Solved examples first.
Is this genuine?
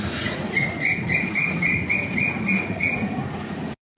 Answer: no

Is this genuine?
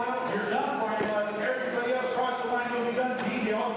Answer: yes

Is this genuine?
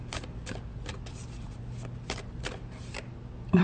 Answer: no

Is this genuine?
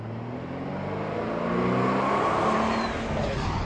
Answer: yes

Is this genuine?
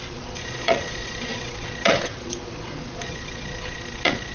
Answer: no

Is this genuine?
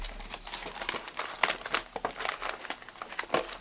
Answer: yes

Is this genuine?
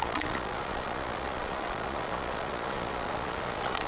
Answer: no